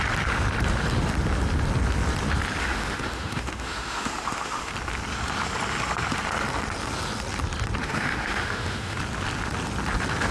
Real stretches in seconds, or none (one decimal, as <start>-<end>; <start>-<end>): 0.0-2.6; 4.7-7.8; 9.0-10.3